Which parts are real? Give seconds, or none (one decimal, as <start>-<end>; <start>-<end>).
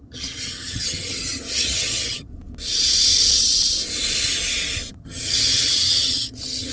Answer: 2.3-4.9